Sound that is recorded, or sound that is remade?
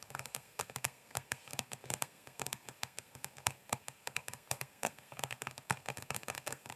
remade